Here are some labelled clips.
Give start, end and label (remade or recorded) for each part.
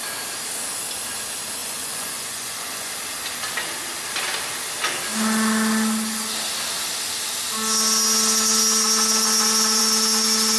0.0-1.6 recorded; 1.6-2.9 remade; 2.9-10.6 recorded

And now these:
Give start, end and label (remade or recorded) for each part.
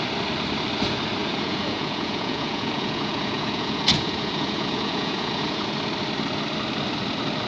0.0-1.2 recorded; 1.2-5.7 remade; 5.7-7.5 recorded